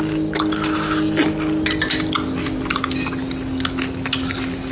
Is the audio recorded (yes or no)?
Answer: yes